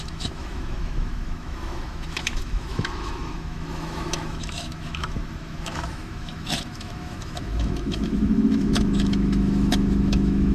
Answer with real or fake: fake